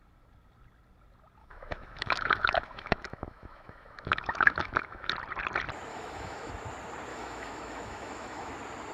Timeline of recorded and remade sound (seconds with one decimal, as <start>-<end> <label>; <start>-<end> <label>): 0.0-1.4 recorded; 1.4-5.1 remade; 5.1-5.9 recorded; 5.9-6.5 remade; 6.5-7.1 recorded; 7.1-8.5 remade; 8.5-8.9 recorded